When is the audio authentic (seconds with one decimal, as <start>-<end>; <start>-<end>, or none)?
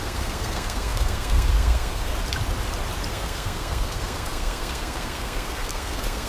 2.1-3.1